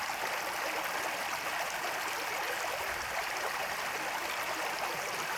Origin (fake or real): real